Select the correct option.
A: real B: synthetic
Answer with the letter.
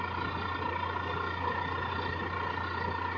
A